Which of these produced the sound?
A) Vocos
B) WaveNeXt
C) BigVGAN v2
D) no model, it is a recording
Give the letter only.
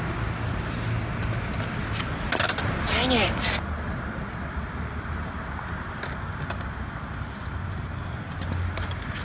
D